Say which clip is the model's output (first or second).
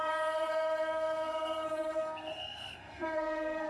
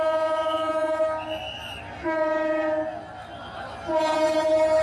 first